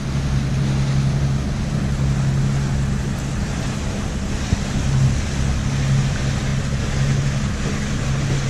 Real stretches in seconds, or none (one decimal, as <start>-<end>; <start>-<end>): 0.0-8.5

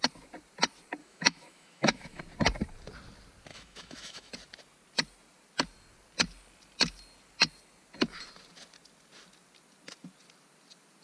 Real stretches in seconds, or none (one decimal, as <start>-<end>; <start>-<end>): 0.0-1.0; 2.2-3.5; 4.3-11.0

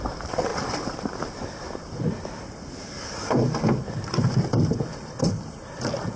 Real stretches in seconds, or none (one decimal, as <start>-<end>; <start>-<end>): 0.0-6.2

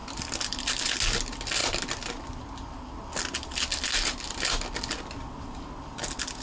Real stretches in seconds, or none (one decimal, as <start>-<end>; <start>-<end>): 0.0-6.4